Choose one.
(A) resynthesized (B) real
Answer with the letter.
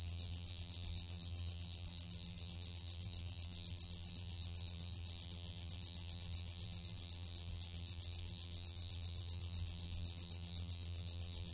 A